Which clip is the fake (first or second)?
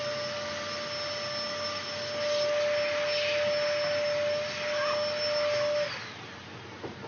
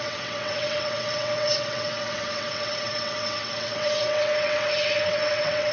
second